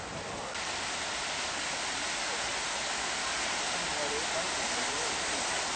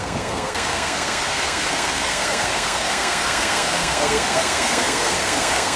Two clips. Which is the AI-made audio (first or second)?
second